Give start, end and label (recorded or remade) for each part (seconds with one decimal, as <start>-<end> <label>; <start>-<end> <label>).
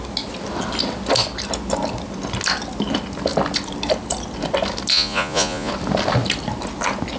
0.0-4.9 recorded; 4.9-5.7 remade; 5.7-7.2 recorded